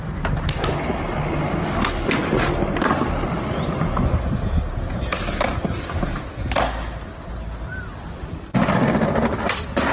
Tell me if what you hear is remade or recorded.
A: recorded